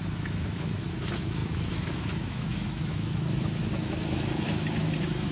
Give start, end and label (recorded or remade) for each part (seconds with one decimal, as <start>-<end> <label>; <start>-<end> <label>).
0.0-5.3 remade